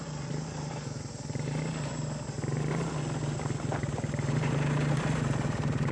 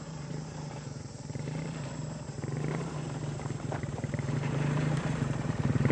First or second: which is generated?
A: second